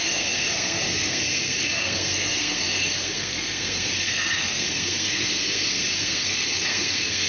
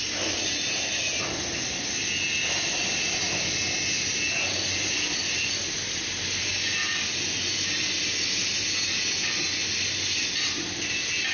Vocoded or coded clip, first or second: first